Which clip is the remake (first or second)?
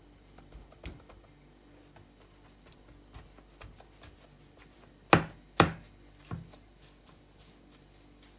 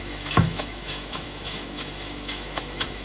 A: second